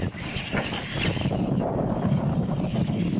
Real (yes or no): yes